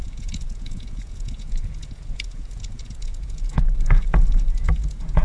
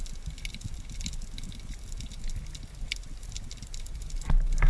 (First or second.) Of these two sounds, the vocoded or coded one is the first